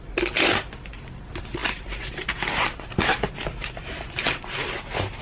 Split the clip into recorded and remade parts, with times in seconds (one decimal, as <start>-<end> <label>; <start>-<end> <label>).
0.0-5.2 recorded